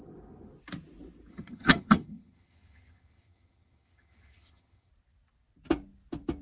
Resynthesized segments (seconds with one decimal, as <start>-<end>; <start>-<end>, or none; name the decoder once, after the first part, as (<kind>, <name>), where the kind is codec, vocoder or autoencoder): 1.3-4.9 (vocoder, HiFi-GAN)